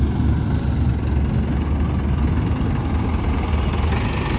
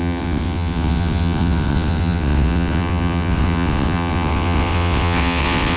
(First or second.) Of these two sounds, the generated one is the second